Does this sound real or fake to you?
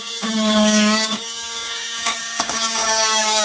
fake